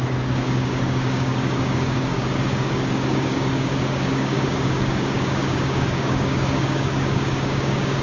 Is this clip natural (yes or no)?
no